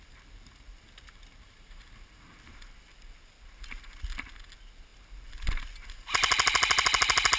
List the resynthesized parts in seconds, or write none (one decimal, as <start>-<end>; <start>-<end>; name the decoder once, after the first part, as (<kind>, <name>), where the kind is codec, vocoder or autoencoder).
none